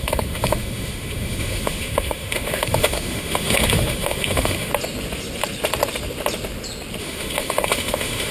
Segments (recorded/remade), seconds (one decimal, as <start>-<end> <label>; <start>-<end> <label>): 0.0-4.7 remade; 4.7-7.0 recorded; 7.0-8.3 remade